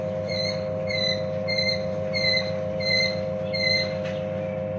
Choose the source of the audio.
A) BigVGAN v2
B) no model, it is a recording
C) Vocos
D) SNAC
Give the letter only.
A